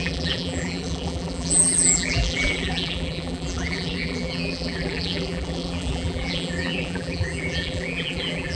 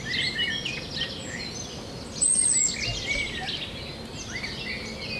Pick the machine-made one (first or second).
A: first